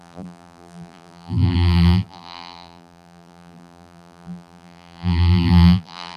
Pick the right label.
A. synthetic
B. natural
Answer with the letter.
A